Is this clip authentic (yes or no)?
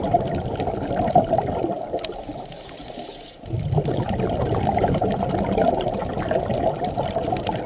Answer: yes